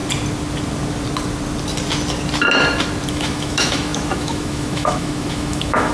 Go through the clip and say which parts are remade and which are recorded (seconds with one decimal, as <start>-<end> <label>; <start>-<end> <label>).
0.0-3.1 recorded; 3.1-5.9 remade